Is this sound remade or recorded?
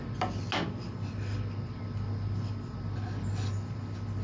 recorded